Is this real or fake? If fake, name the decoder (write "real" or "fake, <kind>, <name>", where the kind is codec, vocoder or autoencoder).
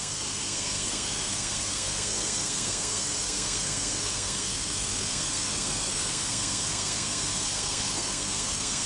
fake, codec, SNAC